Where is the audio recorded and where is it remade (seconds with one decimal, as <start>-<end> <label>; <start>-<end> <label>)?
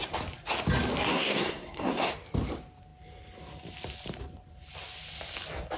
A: 0.0-1.1 recorded; 1.1-2.1 remade; 2.1-5.8 recorded